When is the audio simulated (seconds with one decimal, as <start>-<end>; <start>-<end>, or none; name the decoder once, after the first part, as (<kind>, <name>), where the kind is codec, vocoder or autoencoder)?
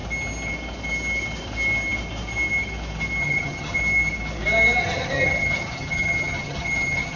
3.2-3.8 (vocoder, HiFi-GAN); 4.8-7.2